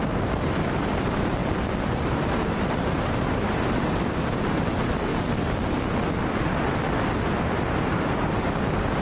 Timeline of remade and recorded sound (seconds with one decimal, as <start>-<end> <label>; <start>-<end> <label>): 0.0-1.4 remade; 1.4-1.9 recorded; 1.9-5.1 remade; 5.1-7.1 recorded; 7.1-9.0 remade